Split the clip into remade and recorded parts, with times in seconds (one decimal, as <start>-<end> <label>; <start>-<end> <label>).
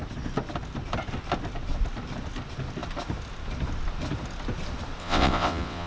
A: 0.0-5.0 recorded; 5.0-5.9 remade